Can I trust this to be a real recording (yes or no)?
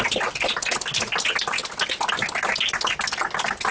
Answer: yes